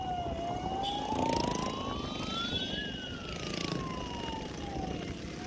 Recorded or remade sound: recorded